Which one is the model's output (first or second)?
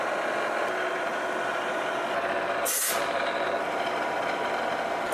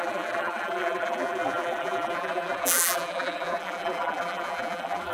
second